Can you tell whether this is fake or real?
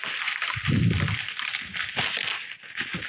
real